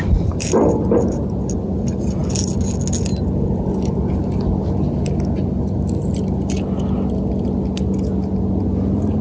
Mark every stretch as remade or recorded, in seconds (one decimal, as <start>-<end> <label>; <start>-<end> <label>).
0.0-9.2 recorded